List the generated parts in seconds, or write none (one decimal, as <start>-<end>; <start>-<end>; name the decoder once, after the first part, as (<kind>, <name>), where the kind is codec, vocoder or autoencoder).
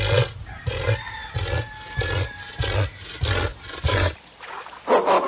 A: 3.5-4.8 (vocoder, BigVGAN v2)